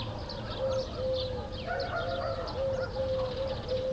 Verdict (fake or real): real